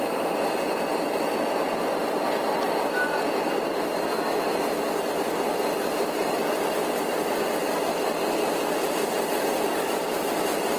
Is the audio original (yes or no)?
yes